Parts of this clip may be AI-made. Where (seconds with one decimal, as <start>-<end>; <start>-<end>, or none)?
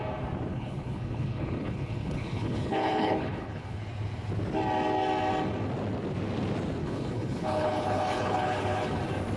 0.5-3.8; 6.8-9.0